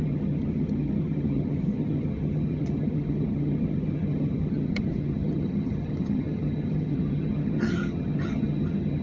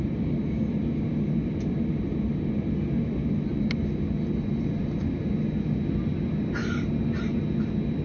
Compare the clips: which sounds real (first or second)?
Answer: second